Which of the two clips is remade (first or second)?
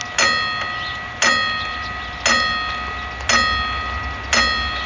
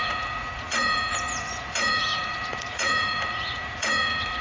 second